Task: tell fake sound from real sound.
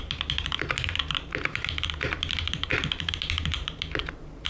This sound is fake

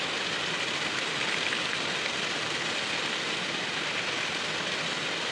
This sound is real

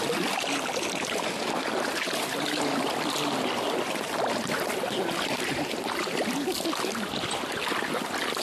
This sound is real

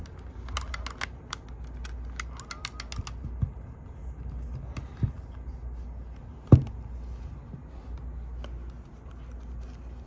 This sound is real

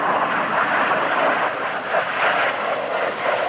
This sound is real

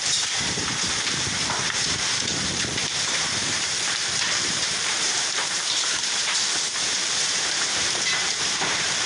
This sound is fake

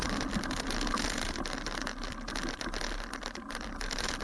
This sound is real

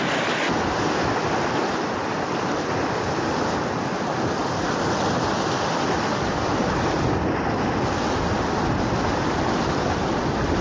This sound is real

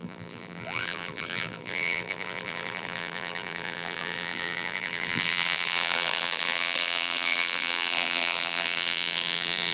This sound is fake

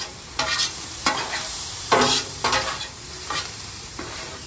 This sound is fake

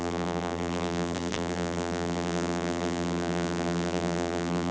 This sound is fake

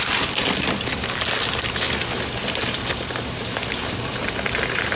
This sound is real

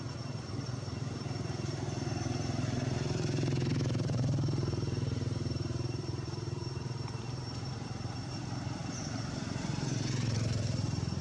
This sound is fake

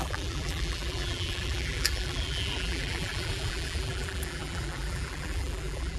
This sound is fake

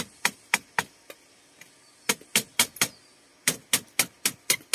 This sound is real